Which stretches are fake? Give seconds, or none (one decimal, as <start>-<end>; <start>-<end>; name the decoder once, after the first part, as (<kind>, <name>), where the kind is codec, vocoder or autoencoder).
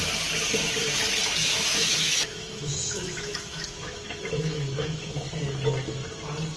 1.3-5.3 (autoencoder, DAC-VAE)